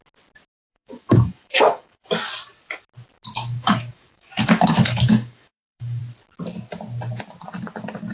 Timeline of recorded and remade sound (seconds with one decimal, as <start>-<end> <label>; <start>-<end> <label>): 0.0-0.7 recorded; 0.7-2.1 remade; 2.1-3.3 recorded; 3.3-6.0 remade; 6.0-8.1 recorded

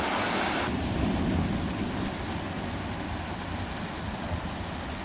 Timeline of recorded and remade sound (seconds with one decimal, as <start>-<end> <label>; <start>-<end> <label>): 0.0-5.0 recorded

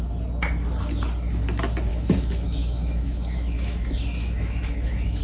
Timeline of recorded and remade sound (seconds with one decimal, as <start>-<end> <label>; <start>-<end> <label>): 0.0-1.9 recorded; 1.9-5.2 remade